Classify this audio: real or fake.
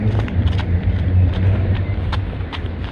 fake